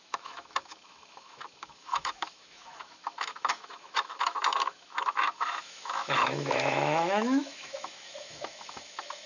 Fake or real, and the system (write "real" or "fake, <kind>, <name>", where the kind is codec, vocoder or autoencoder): fake, autoencoder, DAC-VAE